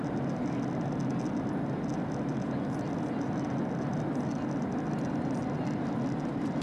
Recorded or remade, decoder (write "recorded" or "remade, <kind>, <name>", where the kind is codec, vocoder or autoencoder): recorded